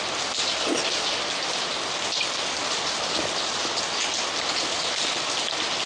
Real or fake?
real